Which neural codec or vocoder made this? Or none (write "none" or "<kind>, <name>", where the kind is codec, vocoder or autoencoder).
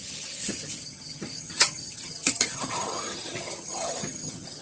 vocoder, HiFi-GAN